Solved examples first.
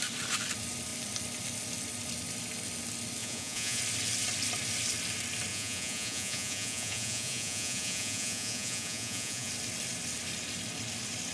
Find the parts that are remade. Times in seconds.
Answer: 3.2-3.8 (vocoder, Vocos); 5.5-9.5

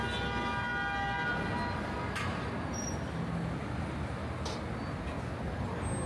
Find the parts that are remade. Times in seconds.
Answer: none